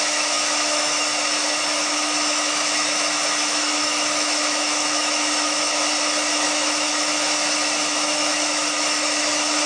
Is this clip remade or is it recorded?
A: remade